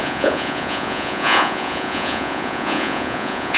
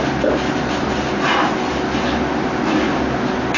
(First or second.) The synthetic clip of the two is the first